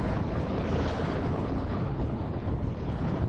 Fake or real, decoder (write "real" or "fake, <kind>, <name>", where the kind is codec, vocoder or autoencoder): fake, codec, HILCodec